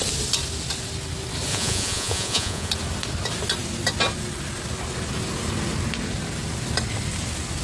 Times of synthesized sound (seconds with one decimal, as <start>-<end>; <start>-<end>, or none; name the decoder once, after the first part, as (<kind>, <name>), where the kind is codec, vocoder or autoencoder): 1.5-2.7 (vocoder, Vocos)